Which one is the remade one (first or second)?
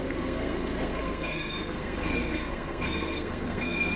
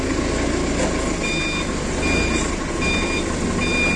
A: first